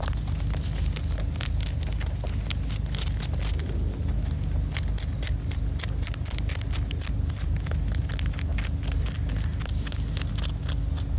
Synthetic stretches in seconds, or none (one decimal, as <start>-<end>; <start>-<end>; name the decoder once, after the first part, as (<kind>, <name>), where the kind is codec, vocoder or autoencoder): none